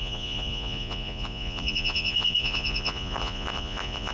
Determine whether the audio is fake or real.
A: fake